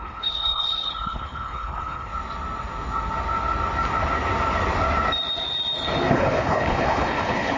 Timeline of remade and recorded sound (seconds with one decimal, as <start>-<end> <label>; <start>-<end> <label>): 0.0-2.1 remade; 2.1-6.1 recorded; 6.1-7.6 remade